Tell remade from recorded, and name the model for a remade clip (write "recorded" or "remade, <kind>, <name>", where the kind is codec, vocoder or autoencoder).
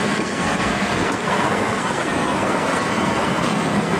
remade, codec, SNAC